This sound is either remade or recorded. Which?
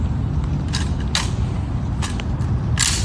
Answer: recorded